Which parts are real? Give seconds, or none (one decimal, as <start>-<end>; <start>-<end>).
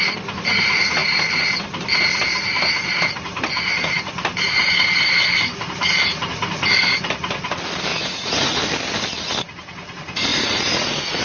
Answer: 0.0-7.9; 8.6-10.3